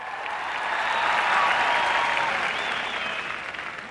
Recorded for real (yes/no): yes